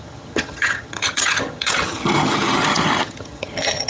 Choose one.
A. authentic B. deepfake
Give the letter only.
B